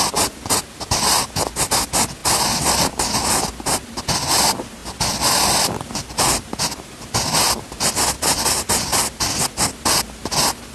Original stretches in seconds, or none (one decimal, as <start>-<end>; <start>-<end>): 0.0-10.7